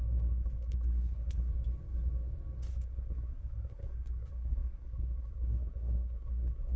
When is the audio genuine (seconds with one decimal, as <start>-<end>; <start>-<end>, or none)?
1.5-2.7